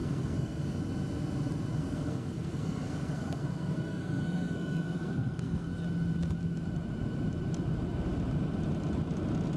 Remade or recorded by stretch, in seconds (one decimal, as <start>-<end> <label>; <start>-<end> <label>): 0.0-0.8 remade; 0.8-1.8 recorded; 1.8-5.7 remade; 5.7-9.6 recorded